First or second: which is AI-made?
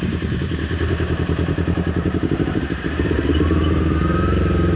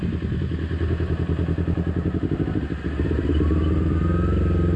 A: first